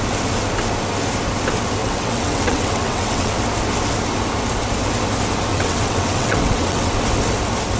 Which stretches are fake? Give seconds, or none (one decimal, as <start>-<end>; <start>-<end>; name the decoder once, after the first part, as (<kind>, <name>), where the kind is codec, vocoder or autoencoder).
1.8-3.3 (vocoder, WaveNeXt); 5.5-6.9